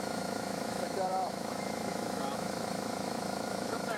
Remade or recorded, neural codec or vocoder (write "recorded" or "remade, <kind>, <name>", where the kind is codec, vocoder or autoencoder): remade, autoencoder, DAC-VAE